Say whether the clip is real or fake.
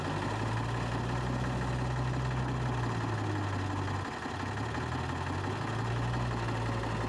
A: real